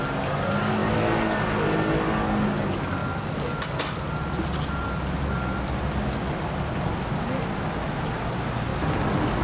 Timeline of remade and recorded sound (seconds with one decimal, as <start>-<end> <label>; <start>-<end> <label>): 0.0-9.4 recorded